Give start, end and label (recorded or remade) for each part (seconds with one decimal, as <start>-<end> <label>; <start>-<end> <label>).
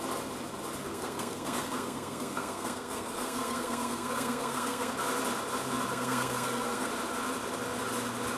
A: 0.0-0.8 recorded; 0.8-4.9 remade; 4.9-5.9 recorded; 5.9-6.9 remade; 6.9-8.4 recorded